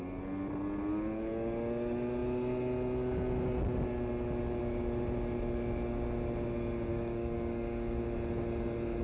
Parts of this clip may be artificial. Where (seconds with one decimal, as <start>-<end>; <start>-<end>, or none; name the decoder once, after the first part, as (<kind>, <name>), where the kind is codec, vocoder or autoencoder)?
6.9-8.0 (codec, DAC)